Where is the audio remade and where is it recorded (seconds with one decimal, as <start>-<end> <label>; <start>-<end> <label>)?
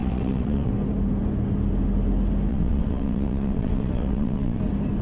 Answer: 0.0-0.7 remade; 0.7-2.5 recorded; 2.5-4.6 remade; 4.6-5.0 recorded